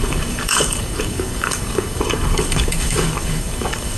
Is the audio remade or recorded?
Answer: remade